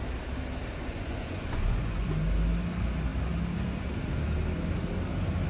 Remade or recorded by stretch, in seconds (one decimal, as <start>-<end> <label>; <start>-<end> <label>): 0.0-0.8 recorded; 0.8-2.1 remade; 2.1-5.5 recorded